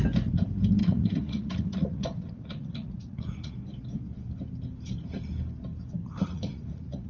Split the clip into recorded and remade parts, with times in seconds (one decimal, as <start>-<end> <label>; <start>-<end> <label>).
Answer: 0.0-0.8 recorded; 0.8-3.5 remade; 3.5-6.0 recorded; 6.0-7.1 remade